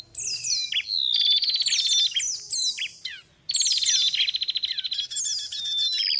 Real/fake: real